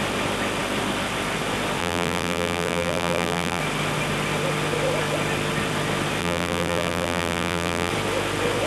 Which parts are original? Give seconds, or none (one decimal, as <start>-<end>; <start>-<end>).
0.0-1.8; 3.6-6.2; 7.9-8.7